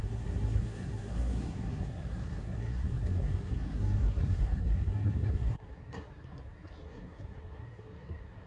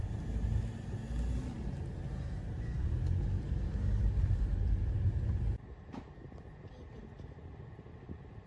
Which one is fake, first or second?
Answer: first